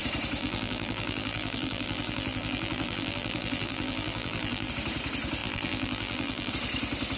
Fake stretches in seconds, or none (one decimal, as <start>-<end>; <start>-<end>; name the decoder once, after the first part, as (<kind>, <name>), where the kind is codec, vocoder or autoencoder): 0.4-4.7 (vocoder, BigVGAN v2); 5.4-6.5